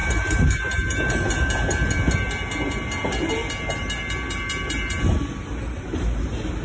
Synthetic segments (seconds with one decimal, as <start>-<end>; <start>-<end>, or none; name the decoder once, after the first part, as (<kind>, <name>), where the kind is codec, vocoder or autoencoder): none